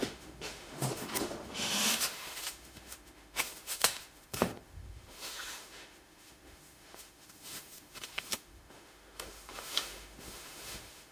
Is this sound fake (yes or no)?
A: yes